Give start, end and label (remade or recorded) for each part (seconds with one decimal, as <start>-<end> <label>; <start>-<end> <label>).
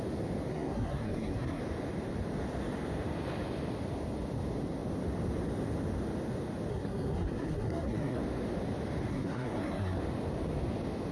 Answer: 0.0-0.5 recorded; 0.5-1.6 remade; 1.6-6.7 recorded; 6.7-8.2 remade; 8.2-9.1 recorded; 9.1-10.0 remade; 10.0-11.1 recorded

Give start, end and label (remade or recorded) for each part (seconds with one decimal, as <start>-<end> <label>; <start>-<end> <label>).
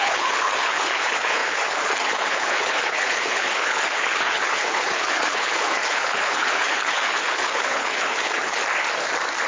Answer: 0.0-8.6 remade; 8.6-9.5 recorded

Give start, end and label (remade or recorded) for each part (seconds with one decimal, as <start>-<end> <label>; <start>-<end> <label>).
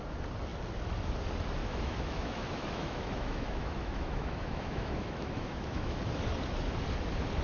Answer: 0.0-1.6 recorded; 1.6-6.0 remade; 6.0-7.4 recorded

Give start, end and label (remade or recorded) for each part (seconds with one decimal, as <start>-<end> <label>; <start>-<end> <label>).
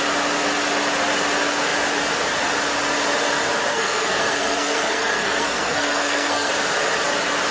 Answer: 0.0-3.7 recorded; 3.7-6.5 remade; 6.5-7.5 recorded